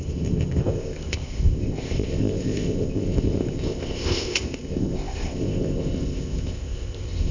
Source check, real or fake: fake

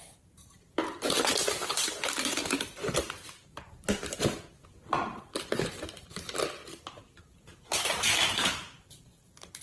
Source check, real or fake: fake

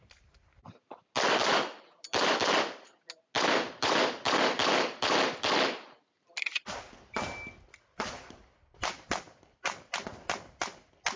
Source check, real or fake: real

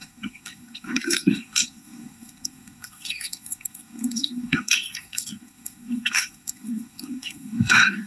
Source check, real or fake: fake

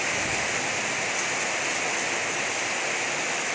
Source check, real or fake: real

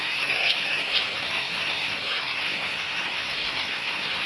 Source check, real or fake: fake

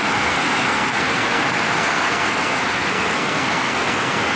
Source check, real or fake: fake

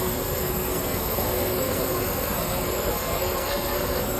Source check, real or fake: fake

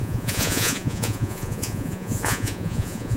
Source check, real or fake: fake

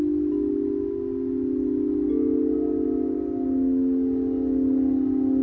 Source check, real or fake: real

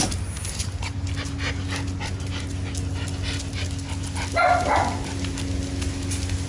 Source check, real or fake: real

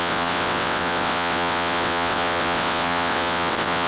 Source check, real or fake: fake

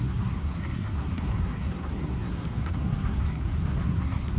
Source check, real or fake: fake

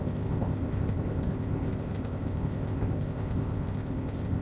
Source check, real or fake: fake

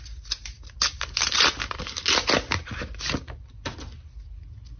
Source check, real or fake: real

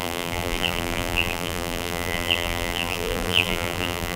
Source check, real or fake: fake